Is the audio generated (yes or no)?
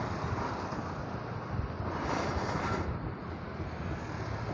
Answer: no